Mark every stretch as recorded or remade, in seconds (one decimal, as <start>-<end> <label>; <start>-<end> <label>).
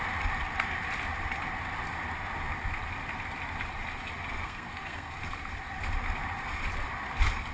0.0-4.4 recorded; 4.4-5.2 remade; 5.2-7.5 recorded